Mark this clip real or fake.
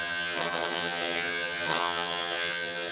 fake